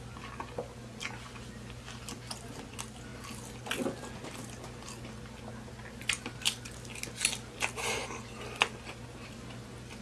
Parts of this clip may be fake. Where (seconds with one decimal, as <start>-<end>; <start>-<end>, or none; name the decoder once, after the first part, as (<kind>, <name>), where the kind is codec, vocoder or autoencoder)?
none